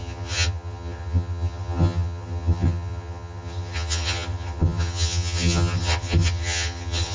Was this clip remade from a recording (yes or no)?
yes